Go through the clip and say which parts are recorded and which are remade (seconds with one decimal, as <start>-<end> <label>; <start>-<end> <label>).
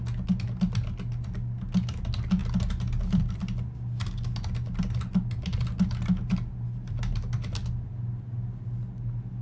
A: 0.0-9.4 recorded